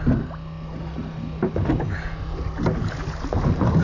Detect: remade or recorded recorded